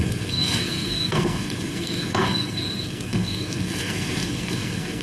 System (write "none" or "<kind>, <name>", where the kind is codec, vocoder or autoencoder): codec, SNAC